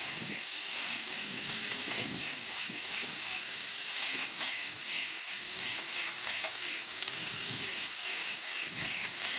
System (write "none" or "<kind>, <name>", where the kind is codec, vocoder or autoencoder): codec, DAC